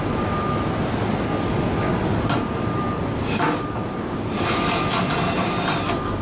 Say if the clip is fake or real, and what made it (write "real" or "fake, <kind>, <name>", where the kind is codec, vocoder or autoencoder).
real